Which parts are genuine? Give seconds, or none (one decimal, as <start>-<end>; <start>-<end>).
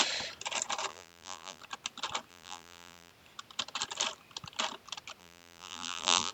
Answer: 0.0-0.9; 1.6-2.3; 3.1-5.2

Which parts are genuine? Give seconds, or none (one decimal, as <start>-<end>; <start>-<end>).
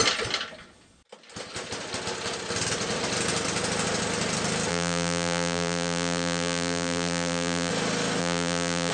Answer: 0.0-4.7; 7.7-8.2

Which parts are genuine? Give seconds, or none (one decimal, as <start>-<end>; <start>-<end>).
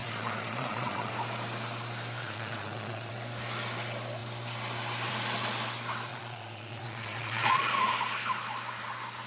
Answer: 1.1-2.2; 3.1-6.1; 7.7-9.3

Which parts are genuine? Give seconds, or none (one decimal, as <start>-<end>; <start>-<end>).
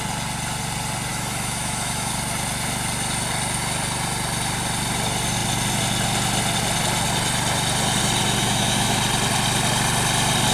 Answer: 0.0-1.1; 2.1-8.4; 9.0-10.5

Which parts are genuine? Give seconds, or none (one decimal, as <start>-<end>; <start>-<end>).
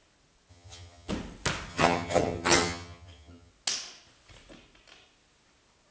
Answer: 0.0-0.5; 1.1-1.7; 3.5-5.9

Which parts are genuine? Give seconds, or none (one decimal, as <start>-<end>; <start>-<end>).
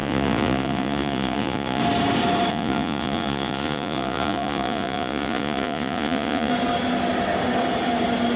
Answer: 1.8-2.5; 6.5-8.4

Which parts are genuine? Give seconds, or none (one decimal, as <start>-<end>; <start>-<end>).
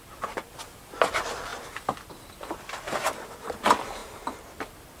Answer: 0.0-1.5; 2.1-5.0